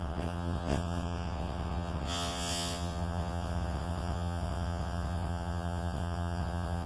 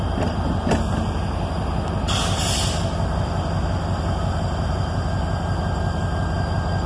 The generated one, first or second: first